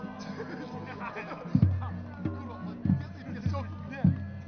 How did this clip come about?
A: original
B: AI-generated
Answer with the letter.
A